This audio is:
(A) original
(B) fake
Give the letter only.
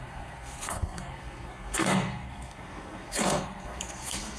B